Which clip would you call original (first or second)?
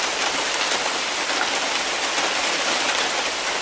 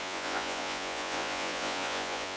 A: first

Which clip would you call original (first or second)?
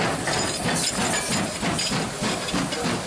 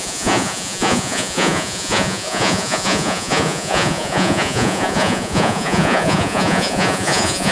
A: first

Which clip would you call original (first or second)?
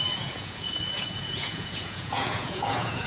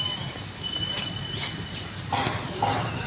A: second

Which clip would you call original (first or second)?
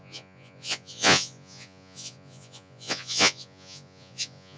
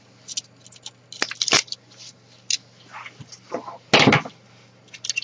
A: second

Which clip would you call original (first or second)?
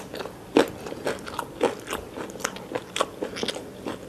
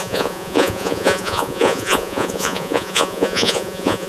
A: first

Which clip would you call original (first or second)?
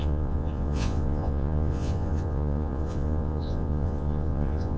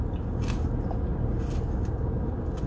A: second